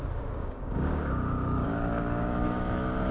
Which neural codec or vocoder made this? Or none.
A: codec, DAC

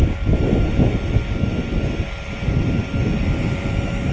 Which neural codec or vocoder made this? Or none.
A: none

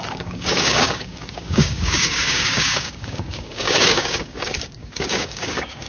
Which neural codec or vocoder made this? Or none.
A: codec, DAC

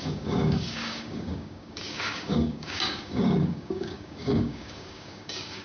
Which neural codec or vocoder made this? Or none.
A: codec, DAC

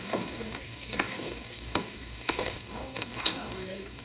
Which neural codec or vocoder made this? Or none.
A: codec, DAC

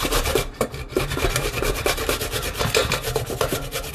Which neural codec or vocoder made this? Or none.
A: none